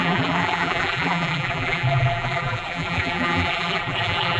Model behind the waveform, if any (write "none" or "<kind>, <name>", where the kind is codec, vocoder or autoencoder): vocoder, BigVGAN v2